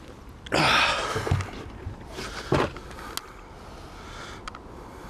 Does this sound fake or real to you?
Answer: real